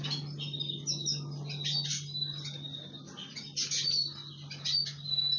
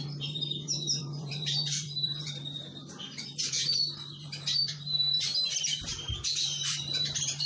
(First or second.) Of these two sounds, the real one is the first